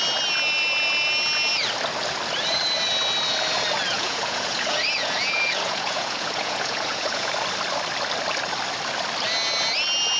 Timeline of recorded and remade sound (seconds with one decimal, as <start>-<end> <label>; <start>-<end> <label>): 0.0-3.9 recorded; 3.9-7.3 remade; 7.3-10.2 recorded